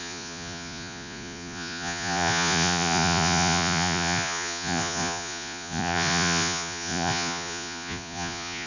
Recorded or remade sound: remade